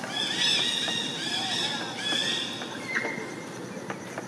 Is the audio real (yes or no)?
yes